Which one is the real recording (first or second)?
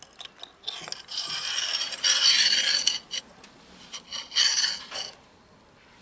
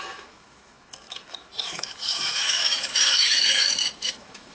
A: first